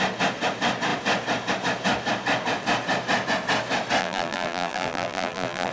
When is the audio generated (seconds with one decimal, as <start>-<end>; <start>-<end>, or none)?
4.0-5.7